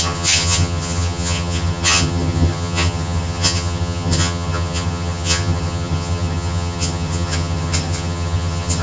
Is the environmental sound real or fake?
fake